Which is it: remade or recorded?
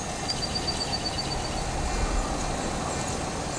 recorded